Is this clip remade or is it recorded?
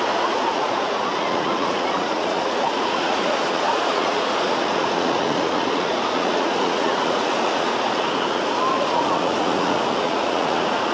remade